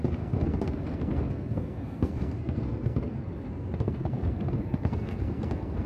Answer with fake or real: fake